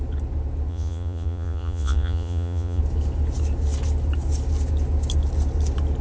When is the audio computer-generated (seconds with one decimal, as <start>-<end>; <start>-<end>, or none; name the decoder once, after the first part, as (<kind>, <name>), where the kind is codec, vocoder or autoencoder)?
0.7-2.8 (vocoder, Vocos)